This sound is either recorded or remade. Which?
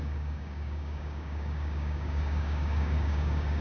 remade